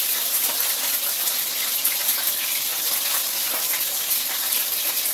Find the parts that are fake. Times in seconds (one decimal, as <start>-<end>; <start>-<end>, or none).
0.0-2.7; 3.6-5.1